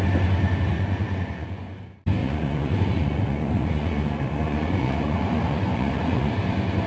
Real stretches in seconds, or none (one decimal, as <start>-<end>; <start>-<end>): 0.0-0.7; 1.8-2.2; 6.3-6.9

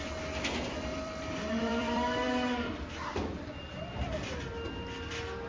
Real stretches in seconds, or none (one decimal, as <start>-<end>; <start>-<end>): 0.0-0.9; 2.3-3.1; 5.1-5.5

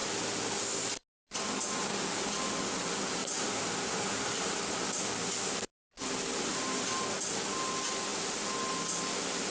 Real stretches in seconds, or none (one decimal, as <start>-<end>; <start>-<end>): 0.0-3.2; 4.6-6.3; 7.0-9.5

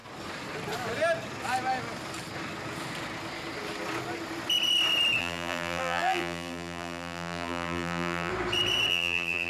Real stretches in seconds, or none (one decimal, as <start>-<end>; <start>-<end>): 0.0-5.2; 8.3-8.9

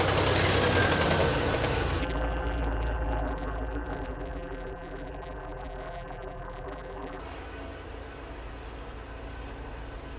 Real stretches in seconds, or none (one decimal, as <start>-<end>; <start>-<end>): 0.0-2.0; 7.2-10.2

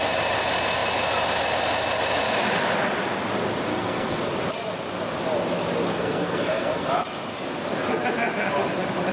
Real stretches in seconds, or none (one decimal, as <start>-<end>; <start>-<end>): 0.0-3.7; 4.2-5.9; 6.9-9.1

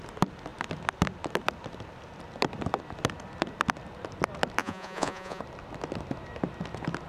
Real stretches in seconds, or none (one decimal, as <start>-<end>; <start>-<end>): 0.0-4.6; 5.4-7.1

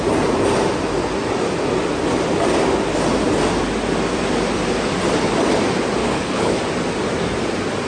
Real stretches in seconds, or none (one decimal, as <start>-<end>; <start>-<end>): 0.0-6.0; 6.6-7.9